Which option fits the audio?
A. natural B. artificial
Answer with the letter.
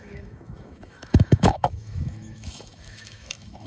B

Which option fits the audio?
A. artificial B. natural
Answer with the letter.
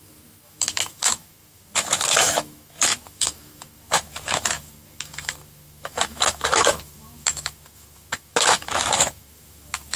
A